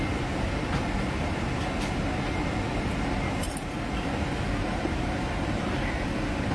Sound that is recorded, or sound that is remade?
recorded